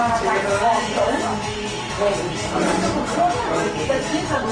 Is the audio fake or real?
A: real